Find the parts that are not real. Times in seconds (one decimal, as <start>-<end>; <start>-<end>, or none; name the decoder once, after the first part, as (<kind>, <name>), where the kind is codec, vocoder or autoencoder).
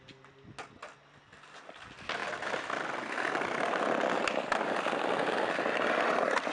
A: none